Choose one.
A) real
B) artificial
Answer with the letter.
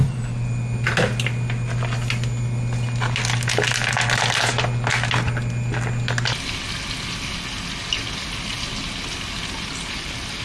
A